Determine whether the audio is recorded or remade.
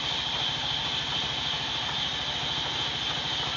recorded